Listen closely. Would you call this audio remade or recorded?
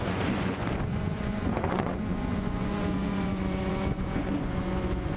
remade